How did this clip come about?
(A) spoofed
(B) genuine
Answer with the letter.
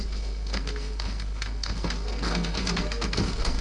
A